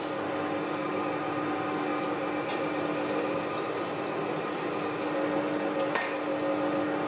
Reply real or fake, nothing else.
real